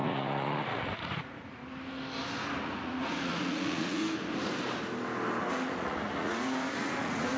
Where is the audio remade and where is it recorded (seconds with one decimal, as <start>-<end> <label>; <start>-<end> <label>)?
0.0-1.6 remade; 1.6-2.6 recorded; 2.6-4.0 remade; 4.0-5.5 recorded; 5.5-7.4 remade